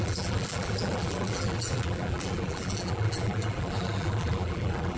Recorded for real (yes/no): no